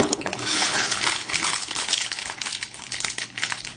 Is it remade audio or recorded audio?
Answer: remade